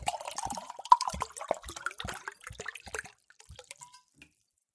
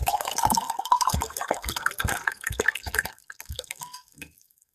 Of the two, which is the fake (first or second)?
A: second